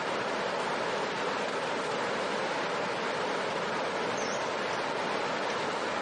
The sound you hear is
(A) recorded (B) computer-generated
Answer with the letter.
A